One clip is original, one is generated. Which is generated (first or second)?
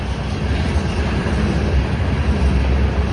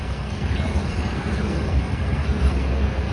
second